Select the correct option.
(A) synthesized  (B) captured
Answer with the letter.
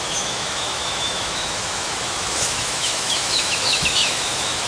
A